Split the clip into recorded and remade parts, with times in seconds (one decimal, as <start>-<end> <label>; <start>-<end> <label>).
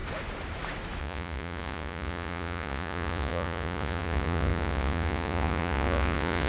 0.0-1.0 recorded; 1.0-6.5 remade